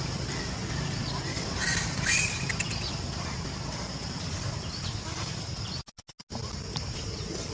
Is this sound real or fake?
real